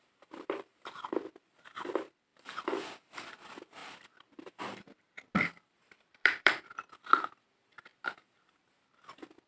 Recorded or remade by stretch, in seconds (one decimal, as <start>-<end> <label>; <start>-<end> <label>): 0.0-2.3 remade; 2.3-3.3 recorded; 3.3-7.9 remade; 7.9-9.1 recorded; 9.1-9.5 remade